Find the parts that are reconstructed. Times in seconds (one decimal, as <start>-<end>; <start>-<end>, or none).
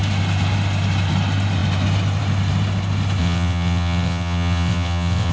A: 3.2-5.3